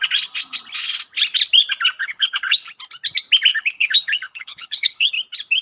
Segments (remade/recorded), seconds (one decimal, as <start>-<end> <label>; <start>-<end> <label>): 0.0-2.0 recorded; 2.0-2.7 remade; 2.7-3.5 recorded; 3.5-5.1 remade; 5.1-5.6 recorded

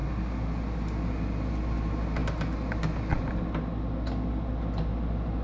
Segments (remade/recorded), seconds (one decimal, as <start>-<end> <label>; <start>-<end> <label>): 0.0-5.4 recorded

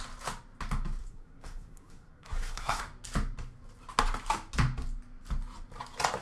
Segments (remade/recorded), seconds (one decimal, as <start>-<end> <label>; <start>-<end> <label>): 0.0-1.0 recorded; 1.0-2.8 remade; 2.8-6.2 recorded

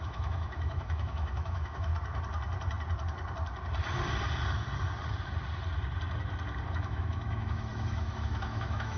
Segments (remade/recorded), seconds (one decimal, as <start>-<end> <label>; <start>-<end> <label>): 0.0-1.9 remade; 1.9-6.7 recorded; 6.7-9.0 remade

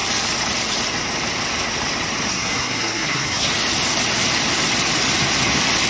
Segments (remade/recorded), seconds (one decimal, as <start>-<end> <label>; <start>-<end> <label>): 0.0-2.3 recorded; 2.3-3.5 remade; 3.5-5.9 recorded

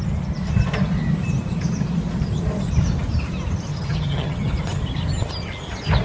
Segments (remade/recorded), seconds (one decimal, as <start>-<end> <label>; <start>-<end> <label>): 0.0-3.7 recorded; 3.7-4.5 remade; 4.5-6.0 recorded

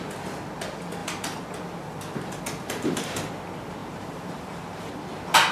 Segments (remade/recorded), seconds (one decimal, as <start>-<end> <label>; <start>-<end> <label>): 0.0-3.8 recorded; 3.8-4.9 remade; 4.9-5.5 recorded

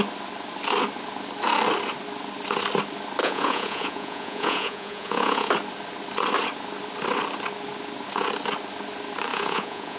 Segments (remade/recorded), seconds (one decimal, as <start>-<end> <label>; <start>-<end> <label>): 0.0-3.2 recorded; 3.2-5.5 remade; 5.5-9.3 recorded; 9.3-10.0 remade